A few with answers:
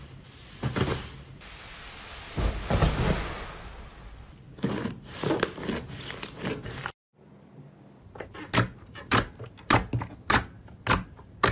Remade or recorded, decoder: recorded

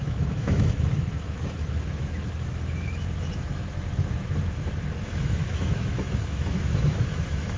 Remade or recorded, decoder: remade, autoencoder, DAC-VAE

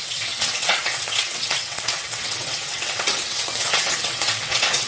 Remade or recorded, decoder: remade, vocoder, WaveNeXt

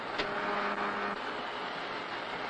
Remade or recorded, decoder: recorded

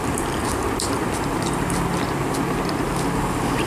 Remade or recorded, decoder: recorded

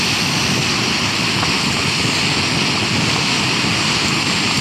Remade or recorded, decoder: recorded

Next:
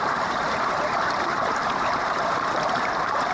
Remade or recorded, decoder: remade, vocoder, BigVGAN v2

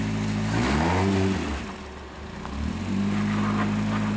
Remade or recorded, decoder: recorded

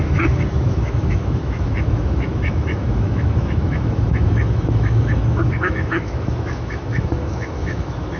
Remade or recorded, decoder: remade, autoencoder, DAC-VAE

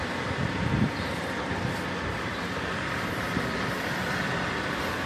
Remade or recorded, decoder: remade, vocoder, BigVGAN v2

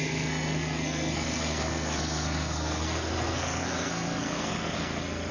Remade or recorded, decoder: remade, codec, SNAC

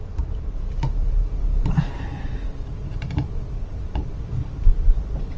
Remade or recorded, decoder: remade, vocoder, BigVGAN v2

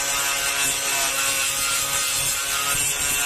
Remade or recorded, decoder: recorded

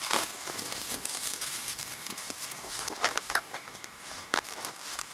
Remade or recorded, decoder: remade, codec, DAC